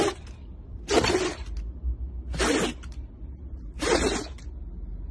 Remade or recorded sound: recorded